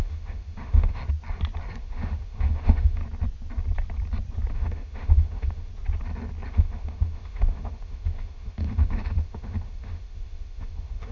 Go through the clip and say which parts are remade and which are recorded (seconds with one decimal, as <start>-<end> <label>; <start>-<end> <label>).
0.0-1.0 remade; 1.0-1.8 recorded; 1.8-3.0 remade; 3.0-4.5 recorded; 4.5-5.7 remade; 5.7-6.5 recorded; 6.5-11.1 remade